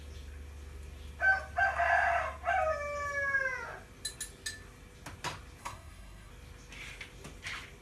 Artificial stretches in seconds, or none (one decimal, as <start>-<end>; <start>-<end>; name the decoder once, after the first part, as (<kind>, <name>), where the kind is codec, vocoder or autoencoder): 5.6-6.3 (codec, SNAC)